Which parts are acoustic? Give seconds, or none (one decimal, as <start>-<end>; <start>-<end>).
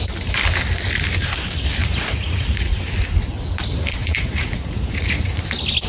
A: 0.0-1.8; 2.8-4.0; 5.4-5.9